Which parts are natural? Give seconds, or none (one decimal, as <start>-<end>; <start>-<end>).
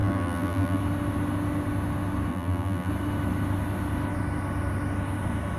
0.8-2.3; 2.9-5.6